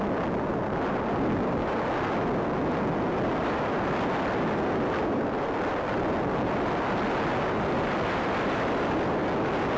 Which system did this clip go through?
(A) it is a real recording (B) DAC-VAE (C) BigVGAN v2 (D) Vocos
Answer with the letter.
C